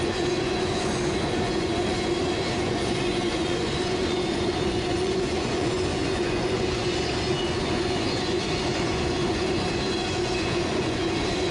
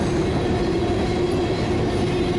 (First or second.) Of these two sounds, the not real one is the first